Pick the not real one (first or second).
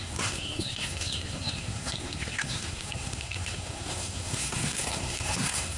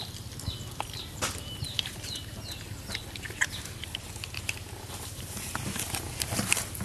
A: first